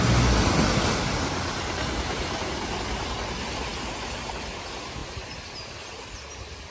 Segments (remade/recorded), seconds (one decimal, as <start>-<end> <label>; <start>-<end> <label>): 0.0-6.7 recorded